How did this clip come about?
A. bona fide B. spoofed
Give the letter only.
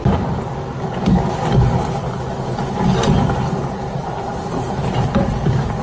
A